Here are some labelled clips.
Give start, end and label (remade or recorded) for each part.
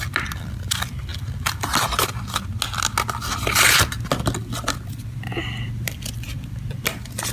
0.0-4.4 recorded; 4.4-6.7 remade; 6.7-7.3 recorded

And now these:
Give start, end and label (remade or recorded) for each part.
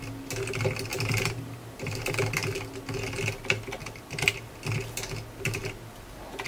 0.0-0.9 recorded; 0.9-2.0 remade; 2.0-6.5 recorded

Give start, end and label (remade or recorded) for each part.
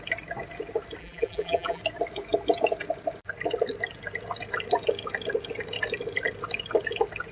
0.0-1.0 recorded; 1.0-1.8 remade; 1.8-7.3 recorded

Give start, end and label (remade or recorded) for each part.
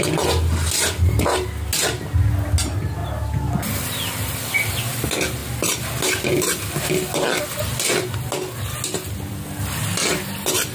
0.0-10.7 recorded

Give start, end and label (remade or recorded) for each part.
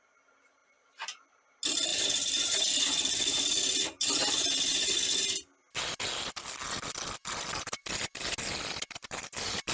0.0-0.6 recorded; 0.6-1.4 remade; 1.4-1.9 recorded; 1.9-3.8 remade; 3.8-9.7 recorded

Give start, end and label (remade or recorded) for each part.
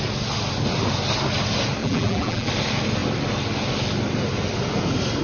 0.0-1.8 recorded; 1.8-2.5 remade; 2.5-5.2 recorded